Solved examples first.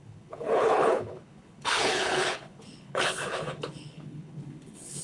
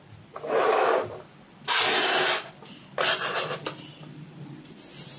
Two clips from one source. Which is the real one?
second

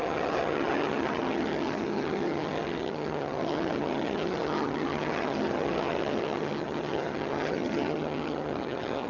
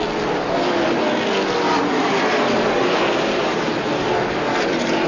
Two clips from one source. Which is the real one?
second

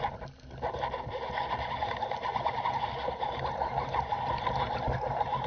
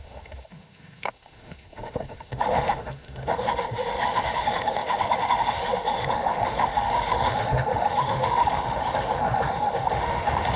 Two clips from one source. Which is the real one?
first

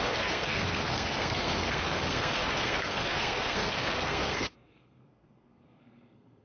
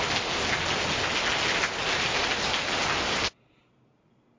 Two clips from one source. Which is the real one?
second